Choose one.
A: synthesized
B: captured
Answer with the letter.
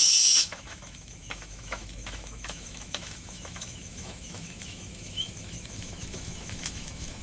A